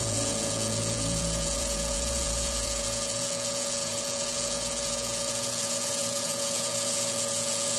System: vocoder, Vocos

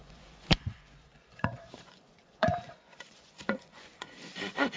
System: vocoder, Vocos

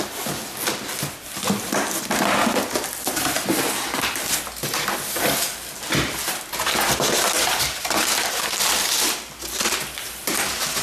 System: none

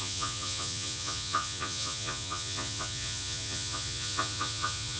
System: vocoder, Vocos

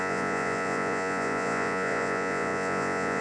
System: vocoder, Vocos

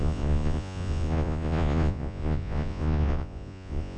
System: vocoder, Vocos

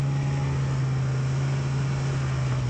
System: none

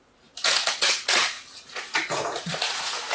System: vocoder, Vocos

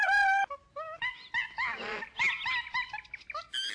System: none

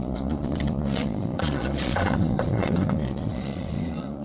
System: vocoder, Vocos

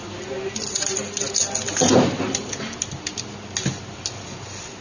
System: none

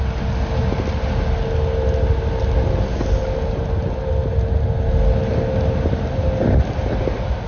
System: none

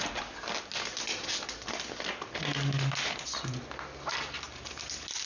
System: none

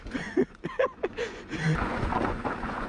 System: vocoder, Vocos